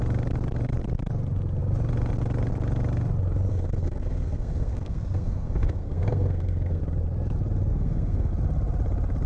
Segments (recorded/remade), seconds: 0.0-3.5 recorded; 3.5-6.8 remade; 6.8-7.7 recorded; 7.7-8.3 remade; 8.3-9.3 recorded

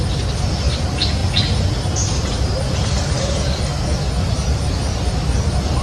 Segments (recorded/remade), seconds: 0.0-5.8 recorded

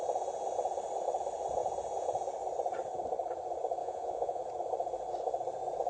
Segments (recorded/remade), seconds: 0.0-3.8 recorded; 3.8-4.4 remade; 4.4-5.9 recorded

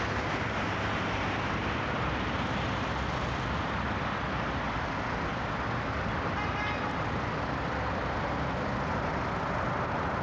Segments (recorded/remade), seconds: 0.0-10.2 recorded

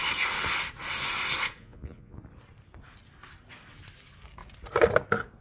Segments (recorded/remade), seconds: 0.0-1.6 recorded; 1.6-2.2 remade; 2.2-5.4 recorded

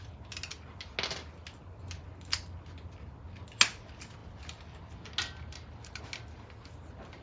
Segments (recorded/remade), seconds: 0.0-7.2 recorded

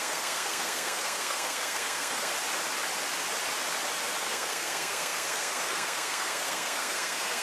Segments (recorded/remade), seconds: 0.0-2.3 remade; 2.3-4.2 recorded; 4.2-7.4 remade